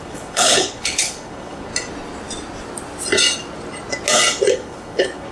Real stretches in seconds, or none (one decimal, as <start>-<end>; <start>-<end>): 1.7-4.5